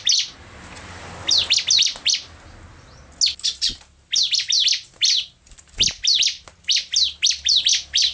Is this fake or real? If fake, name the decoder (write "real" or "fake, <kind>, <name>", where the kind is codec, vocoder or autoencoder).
real